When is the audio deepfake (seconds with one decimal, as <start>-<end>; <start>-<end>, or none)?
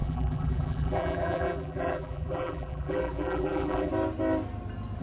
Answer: 0.0-3.9